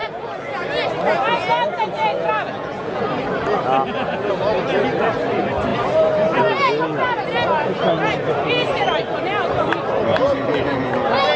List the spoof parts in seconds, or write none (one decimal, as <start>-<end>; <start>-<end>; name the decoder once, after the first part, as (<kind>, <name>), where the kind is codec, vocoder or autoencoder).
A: 0.0-0.6 (vocoder, Vocos); 2.1-3.0; 10.1-10.9